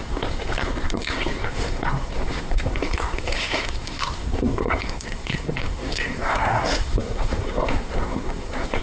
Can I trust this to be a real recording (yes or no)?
no